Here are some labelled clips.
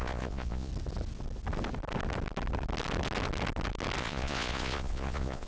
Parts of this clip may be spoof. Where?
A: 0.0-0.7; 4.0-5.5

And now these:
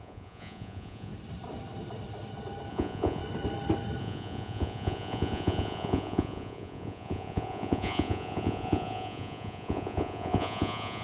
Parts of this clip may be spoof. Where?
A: 0.0-1.1; 2.7-3.2; 4.0-11.0

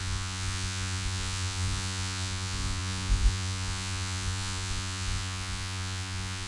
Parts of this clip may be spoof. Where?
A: 0.0-6.5

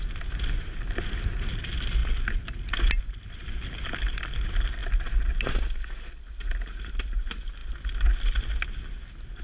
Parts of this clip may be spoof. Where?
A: none

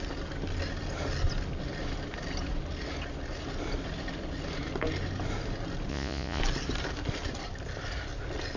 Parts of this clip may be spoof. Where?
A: 5.9-6.4

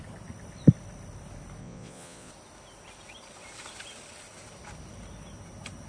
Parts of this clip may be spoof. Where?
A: 1.6-2.3